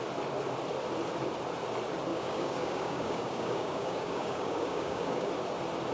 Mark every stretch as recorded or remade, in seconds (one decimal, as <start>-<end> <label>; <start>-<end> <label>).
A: 0.0-2.1 recorded; 2.1-5.3 remade; 5.3-5.9 recorded